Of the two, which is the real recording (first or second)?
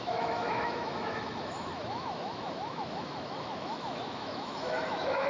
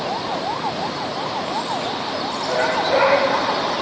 second